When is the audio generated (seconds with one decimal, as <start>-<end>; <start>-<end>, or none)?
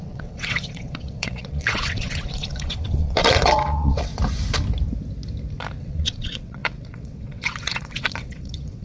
0.0-4.1; 5.8-8.8